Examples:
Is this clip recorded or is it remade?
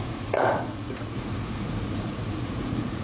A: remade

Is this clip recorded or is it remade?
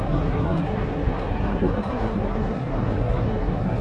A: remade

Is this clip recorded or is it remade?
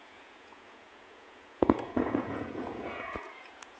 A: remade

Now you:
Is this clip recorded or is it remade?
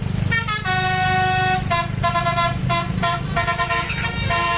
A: recorded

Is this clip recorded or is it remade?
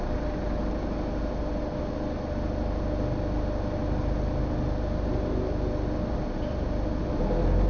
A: recorded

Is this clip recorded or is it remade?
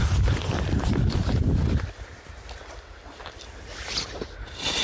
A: recorded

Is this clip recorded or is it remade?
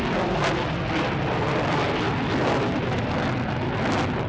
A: recorded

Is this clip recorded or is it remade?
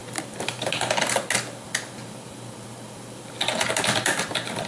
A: recorded